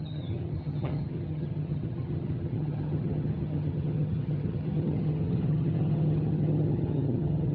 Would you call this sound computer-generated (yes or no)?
yes